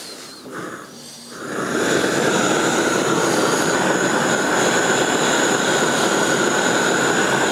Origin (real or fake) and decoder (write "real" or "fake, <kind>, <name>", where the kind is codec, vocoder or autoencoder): real